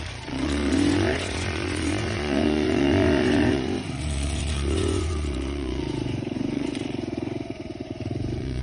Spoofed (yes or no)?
yes